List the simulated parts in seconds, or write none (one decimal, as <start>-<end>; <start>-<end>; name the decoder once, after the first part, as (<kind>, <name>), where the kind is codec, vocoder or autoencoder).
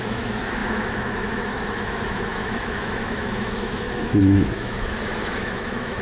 0.0-6.0 (autoencoder, DAC-VAE)